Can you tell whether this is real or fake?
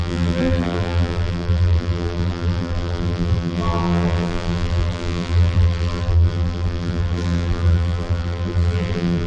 fake